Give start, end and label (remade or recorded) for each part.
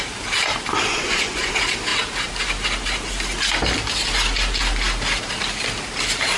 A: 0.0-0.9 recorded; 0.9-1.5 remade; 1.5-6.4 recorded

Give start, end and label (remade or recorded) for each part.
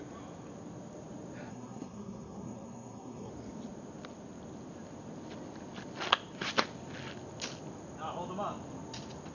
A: 0.0-1.5 recorded; 1.5-3.3 remade; 3.3-9.3 recorded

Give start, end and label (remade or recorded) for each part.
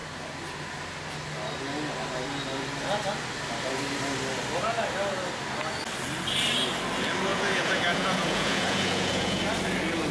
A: 0.0-7.3 recorded; 7.3-9.4 remade; 9.4-10.1 recorded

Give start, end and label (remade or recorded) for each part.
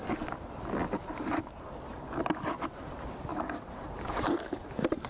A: 0.0-3.3 recorded; 3.3-4.1 remade; 4.1-5.1 recorded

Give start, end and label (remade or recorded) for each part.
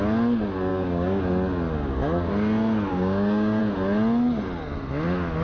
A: 0.0-0.7 recorded; 0.7-1.2 remade; 1.2-2.9 recorded; 2.9-3.6 remade; 3.6-5.4 recorded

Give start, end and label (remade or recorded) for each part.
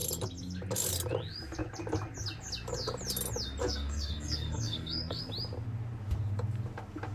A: 0.0-3.6 recorded; 3.6-5.2 remade; 5.2-7.1 recorded